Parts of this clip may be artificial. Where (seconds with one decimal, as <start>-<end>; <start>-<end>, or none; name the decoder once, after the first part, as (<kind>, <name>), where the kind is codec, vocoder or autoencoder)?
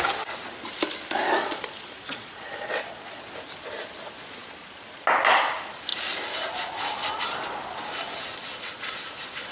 1.4-3.2 (vocoder, Vocos)